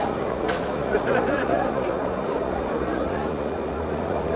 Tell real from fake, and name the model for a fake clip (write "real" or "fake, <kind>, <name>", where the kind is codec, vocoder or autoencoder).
fake, vocoder, Vocos